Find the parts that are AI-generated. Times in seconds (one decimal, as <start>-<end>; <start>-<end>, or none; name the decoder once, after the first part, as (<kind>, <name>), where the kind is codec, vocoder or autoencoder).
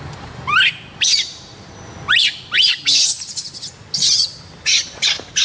none